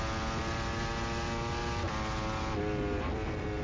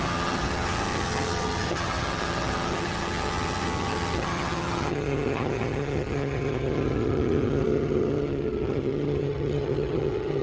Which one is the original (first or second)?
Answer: first